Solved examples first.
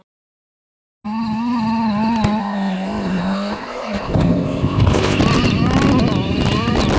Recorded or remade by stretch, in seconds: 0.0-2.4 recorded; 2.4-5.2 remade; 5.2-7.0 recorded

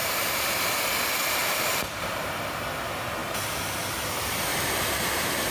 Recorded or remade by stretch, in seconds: 0.0-0.7 remade; 0.7-1.4 recorded; 1.4-2.3 remade; 2.3-3.2 recorded; 3.2-3.8 remade; 3.8-4.5 recorded; 4.5-5.5 remade

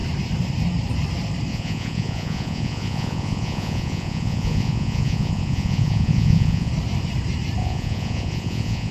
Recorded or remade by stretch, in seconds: 0.0-1.5 recorded; 1.5-6.7 remade; 6.7-7.6 recorded; 7.6-8.9 remade